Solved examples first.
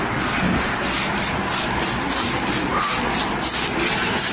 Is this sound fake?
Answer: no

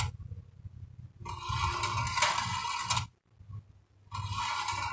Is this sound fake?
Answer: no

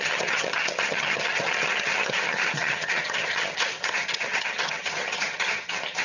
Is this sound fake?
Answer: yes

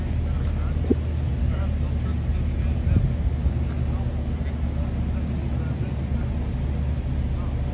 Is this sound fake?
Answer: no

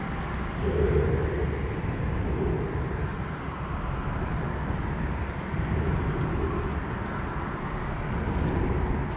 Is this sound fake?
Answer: no